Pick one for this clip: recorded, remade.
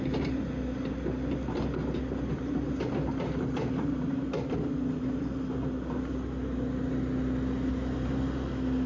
recorded